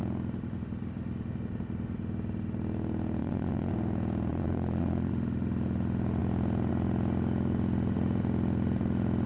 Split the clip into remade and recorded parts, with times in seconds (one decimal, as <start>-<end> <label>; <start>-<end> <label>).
0.0-3.2 recorded; 3.2-3.7 remade; 3.7-4.3 recorded; 4.3-5.1 remade; 5.1-9.3 recorded